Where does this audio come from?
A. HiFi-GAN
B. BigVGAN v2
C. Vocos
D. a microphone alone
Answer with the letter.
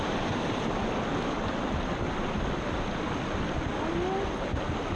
D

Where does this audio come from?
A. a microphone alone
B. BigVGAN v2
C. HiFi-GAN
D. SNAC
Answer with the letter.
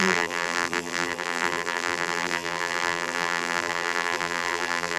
B